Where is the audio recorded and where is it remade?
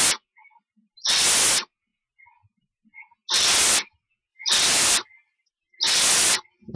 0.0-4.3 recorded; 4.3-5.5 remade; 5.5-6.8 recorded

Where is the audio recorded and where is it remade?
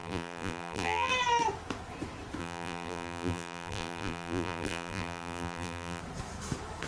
0.0-1.1 remade; 1.1-2.4 recorded; 2.4-6.0 remade; 6.0-6.9 recorded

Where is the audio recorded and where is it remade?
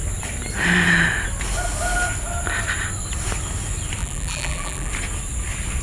0.0-4.0 recorded; 4.0-4.9 remade; 4.9-5.8 recorded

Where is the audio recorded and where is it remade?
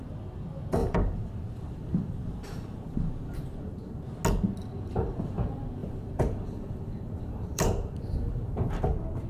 0.0-0.8 recorded; 0.8-4.0 remade; 4.0-5.8 recorded; 5.8-8.8 remade; 8.8-9.3 recorded